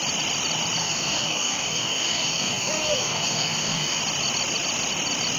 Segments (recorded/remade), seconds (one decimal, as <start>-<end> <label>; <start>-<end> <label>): 0.0-0.8 recorded; 0.8-4.0 remade; 4.0-5.4 recorded